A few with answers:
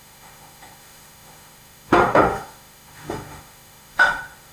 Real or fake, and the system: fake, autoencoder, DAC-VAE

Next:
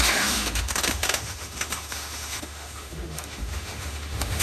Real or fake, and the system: fake, autoencoder, DAC-VAE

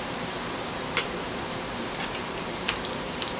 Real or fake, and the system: fake, vocoder, BigVGAN v2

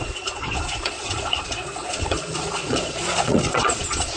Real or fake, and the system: fake, vocoder, Vocos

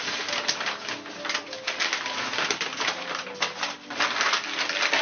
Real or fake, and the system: real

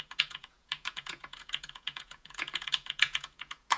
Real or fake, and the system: fake, vocoder, Vocos